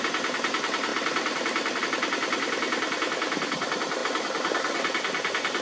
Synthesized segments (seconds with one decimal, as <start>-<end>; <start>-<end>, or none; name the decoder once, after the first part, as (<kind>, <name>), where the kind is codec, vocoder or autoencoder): none